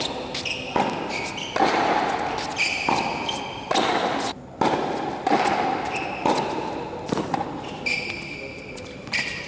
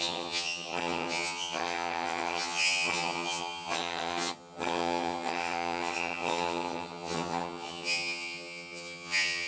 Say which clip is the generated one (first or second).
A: second